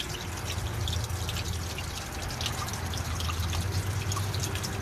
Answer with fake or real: real